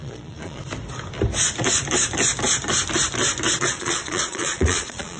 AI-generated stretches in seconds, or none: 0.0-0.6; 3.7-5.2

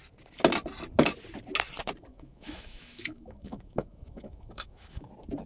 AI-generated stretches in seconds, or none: 2.1-5.1

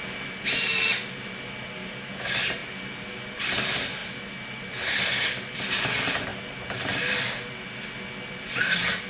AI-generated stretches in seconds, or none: none

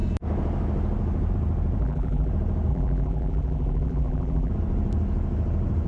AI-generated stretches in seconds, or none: 1.8-2.3; 2.7-4.5